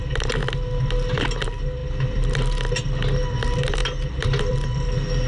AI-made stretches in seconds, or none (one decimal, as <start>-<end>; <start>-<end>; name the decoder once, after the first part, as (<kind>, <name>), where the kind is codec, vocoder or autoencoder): none